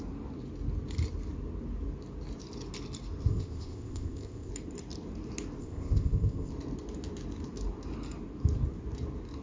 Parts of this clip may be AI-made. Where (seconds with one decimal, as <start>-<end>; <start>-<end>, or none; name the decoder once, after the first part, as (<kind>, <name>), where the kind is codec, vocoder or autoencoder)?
3.3-4.5 (codec, ZipCodec); 5.6-6.5